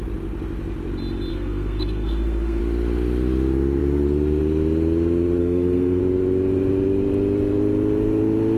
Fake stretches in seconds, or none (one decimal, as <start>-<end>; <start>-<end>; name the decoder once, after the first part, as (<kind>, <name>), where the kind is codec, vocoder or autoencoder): 1.3-2.6 (codec, SNAC); 5.4-6.0